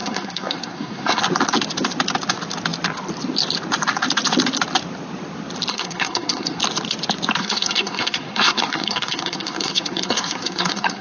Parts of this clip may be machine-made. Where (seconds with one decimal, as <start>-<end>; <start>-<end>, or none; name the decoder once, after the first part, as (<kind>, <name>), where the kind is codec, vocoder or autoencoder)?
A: 0.0-1.2 (codec, SNAC); 5.7-6.6; 7.4-11.0